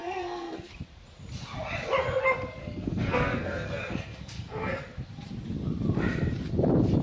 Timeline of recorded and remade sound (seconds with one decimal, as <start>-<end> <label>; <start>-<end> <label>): 0.0-0.7 remade; 0.7-2.6 recorded; 2.6-4.8 remade; 4.8-7.0 recorded